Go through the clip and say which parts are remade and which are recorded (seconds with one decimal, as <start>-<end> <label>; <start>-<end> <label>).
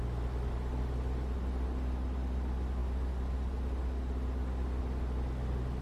0.0-5.8 recorded